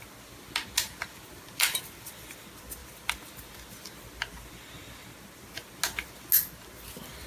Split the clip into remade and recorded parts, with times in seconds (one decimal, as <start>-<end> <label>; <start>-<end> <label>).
0.0-7.3 recorded